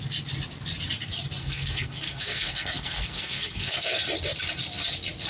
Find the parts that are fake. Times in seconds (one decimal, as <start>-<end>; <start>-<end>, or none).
1.4-4.0